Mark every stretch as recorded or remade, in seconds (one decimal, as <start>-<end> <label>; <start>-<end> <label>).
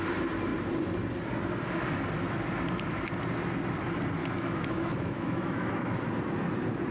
0.0-4.2 recorded; 4.2-6.0 remade; 6.0-6.9 recorded